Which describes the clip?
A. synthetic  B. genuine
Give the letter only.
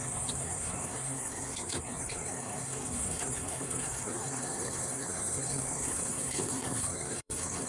A